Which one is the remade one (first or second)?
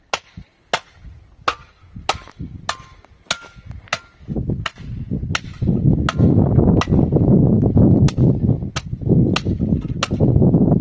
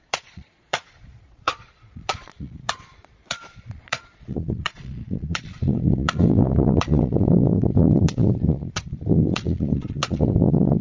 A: second